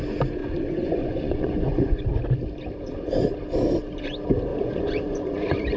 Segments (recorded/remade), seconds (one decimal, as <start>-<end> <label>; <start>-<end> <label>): 0.0-0.4 recorded; 0.4-2.0 remade; 2.0-4.5 recorded; 4.5-5.8 remade